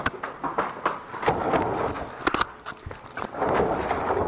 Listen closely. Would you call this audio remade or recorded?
recorded